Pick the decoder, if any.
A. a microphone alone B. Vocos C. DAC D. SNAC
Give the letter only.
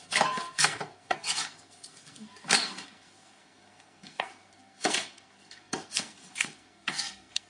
D